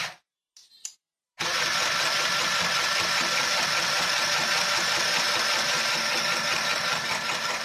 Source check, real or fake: real